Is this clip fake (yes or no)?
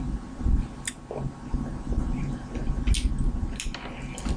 no